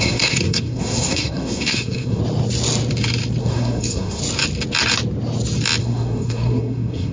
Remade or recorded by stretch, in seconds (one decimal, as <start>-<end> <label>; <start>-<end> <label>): 0.0-2.2 remade; 2.2-3.4 recorded; 3.4-4.2 remade; 4.2-5.8 recorded; 5.8-7.1 remade